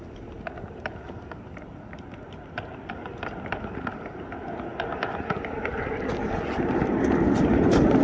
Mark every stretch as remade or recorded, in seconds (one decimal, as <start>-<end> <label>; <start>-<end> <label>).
0.0-8.0 recorded